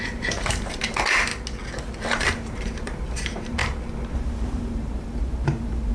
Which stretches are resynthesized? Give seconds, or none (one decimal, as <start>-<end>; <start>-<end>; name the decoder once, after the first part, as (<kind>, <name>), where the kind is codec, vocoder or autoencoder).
0.0-1.3 (vocoder, BigVGAN v2); 2.0-5.9